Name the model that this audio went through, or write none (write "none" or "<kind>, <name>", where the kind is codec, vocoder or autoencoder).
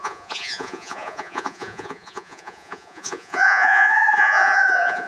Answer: vocoder, Vocos